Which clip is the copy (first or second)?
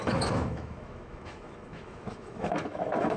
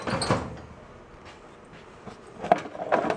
first